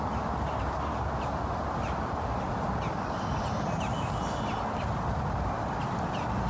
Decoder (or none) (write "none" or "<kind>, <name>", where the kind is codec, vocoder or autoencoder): none